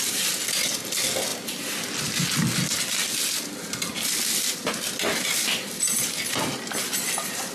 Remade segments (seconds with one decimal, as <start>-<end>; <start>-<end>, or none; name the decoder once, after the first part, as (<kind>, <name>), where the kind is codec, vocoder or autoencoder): none